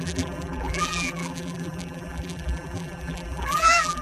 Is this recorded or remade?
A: remade